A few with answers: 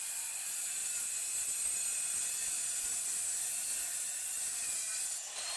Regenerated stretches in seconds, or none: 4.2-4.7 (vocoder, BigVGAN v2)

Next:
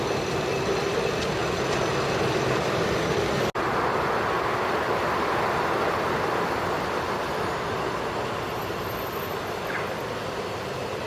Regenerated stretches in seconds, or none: none

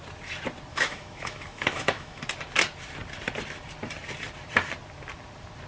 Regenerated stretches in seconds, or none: 0.7-2.2 (autoencoder, DAC-VAE)

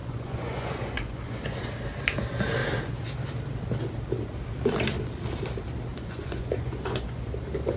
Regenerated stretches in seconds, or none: 0.0-1.6 (vocoder, Vocos); 5.9-7.2

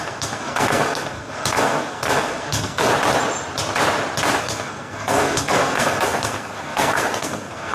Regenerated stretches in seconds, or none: 0.0-2.9 (codec, SNAC); 4.4-7.7

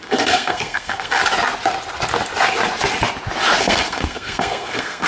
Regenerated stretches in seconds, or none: 0.0-1.2 (codec, SNAC); 3.6-5.1

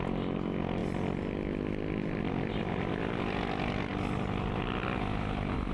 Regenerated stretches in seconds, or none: none